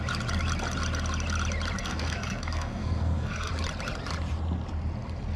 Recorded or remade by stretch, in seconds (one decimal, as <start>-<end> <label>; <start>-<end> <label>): 0.0-1.8 recorded; 1.8-3.5 remade; 3.5-5.4 recorded